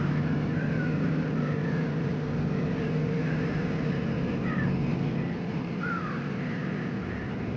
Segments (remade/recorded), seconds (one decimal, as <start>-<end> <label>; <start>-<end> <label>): 0.0-2.1 remade; 2.1-2.8 recorded; 2.8-4.9 remade; 4.9-5.5 recorded; 5.5-7.6 remade

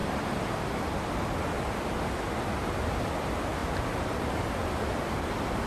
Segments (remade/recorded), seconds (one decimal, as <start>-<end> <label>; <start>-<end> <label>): 0.0-2.7 remade; 2.7-3.6 recorded; 3.6-5.7 remade

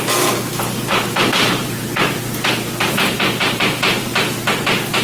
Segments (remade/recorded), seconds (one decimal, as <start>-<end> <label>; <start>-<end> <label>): 0.0-1.3 recorded; 1.3-2.2 remade; 2.2-5.0 recorded

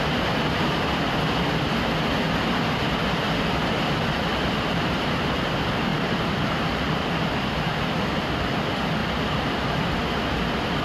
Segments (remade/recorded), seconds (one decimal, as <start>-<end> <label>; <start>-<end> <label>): 0.0-5.9 recorded; 5.9-8.4 remade; 8.4-9.0 recorded; 9.0-9.8 remade; 9.8-10.8 recorded